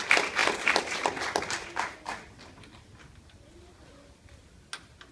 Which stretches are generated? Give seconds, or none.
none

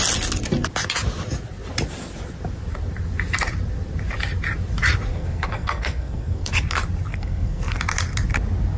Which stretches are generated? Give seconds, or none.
5.1-6.5 (codec, SNAC); 7.1-7.8